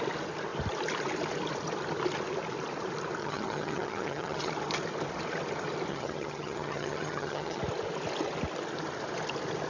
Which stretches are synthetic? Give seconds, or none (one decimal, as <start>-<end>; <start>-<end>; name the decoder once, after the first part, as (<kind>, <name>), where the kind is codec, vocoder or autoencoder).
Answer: 3.2-4.5 (vocoder, HiFi-GAN); 5.9-7.6